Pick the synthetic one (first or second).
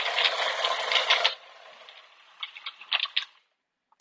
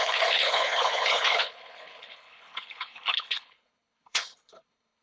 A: second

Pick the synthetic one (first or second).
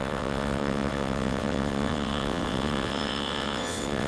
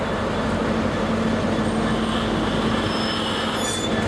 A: first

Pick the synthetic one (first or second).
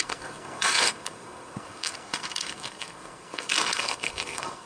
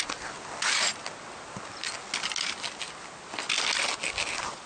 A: first